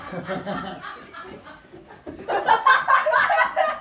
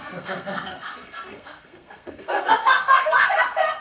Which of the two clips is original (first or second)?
first